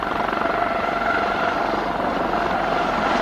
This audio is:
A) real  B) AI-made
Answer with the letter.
B